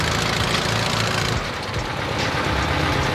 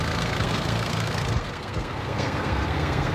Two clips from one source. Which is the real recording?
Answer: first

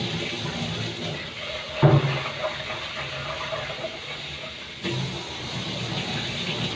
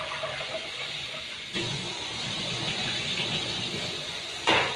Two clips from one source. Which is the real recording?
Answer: first